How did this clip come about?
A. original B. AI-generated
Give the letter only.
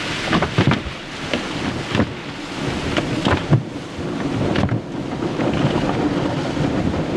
A